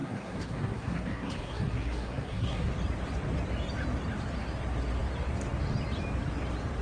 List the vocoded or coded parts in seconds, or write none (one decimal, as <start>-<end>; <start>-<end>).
0.0-2.7